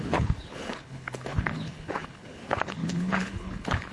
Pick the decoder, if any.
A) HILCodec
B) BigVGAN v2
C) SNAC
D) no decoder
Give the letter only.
A